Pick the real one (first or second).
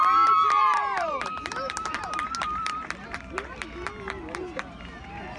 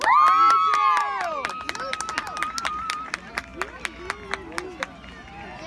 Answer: second